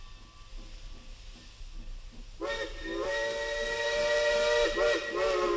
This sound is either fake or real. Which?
real